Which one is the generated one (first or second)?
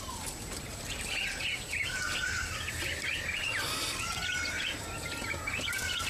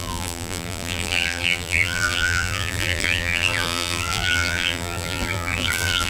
second